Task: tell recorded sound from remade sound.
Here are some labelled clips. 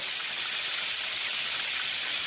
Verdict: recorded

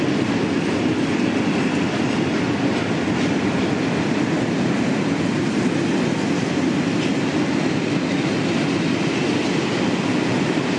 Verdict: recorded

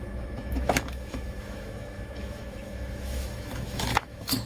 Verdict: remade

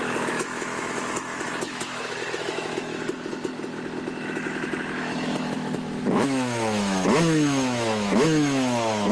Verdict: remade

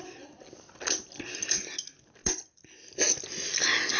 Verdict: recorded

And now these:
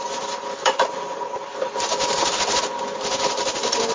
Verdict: recorded